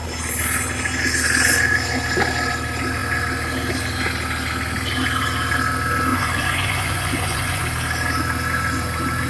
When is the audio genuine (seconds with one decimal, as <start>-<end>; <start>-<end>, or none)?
0.0-6.1; 7.6-9.3